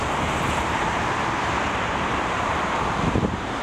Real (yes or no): no